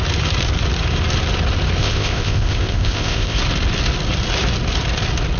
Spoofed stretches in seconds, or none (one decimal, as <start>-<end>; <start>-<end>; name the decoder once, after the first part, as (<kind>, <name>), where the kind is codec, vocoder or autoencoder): 1.8-3.4 (codec, ZipCodec)